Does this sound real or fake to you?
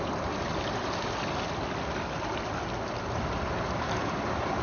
real